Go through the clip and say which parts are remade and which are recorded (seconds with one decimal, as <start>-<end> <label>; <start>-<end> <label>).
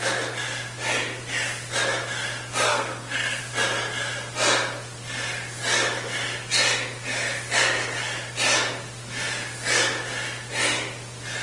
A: 0.0-2.7 recorded; 2.7-3.4 remade; 3.4-11.4 recorded